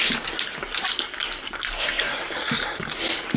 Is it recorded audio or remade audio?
recorded